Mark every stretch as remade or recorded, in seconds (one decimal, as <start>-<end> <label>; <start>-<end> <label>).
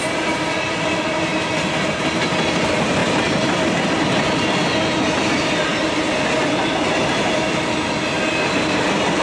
0.0-9.2 recorded